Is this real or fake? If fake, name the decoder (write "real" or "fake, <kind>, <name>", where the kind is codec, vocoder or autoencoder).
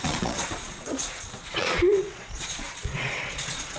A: fake, vocoder, Vocos